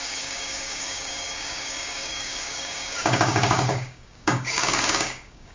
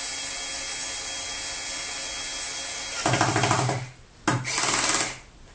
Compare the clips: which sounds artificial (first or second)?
first